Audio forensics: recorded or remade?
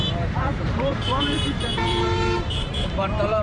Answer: remade